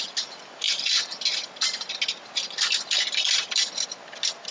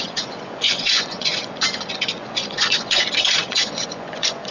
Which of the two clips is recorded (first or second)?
first